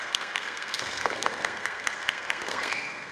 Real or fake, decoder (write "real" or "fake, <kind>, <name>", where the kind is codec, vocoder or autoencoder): fake, codec, SNAC